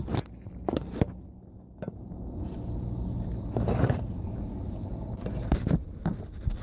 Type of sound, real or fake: real